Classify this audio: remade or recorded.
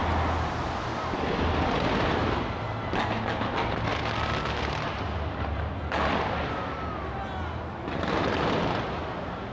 recorded